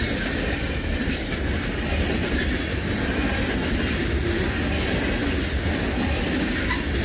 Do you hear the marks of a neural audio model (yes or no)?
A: no